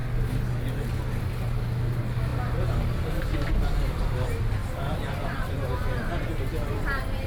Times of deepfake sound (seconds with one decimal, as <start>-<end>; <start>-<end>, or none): none

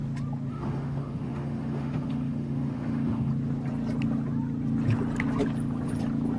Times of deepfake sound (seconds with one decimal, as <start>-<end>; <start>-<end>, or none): 0.5-3.3

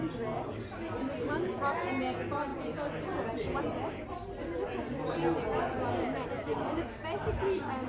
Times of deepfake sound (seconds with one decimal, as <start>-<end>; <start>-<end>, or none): none

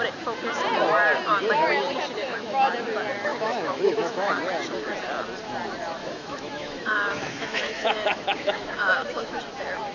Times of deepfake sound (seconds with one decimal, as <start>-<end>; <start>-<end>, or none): 2.2-2.7; 3.3-4.3; 6.0-9.4

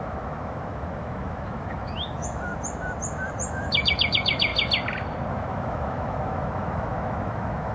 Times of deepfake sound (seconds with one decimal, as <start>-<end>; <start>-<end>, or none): 0.0-2.5; 3.5-4.5; 5.3-7.7

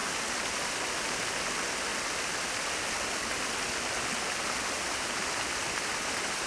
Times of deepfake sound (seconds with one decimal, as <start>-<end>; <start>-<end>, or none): none

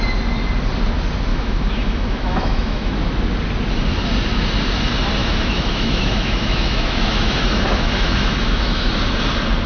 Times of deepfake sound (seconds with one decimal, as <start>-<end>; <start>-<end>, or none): 1.3-2.9; 5.2-8.9